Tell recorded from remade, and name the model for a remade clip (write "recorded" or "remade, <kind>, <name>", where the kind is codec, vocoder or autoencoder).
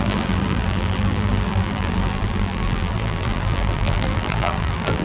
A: remade, vocoder, BigVGAN v2